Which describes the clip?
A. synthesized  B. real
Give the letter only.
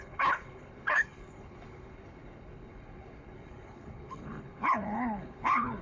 A